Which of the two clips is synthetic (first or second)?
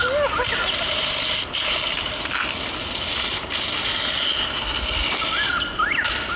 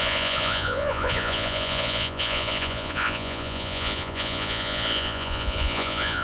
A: second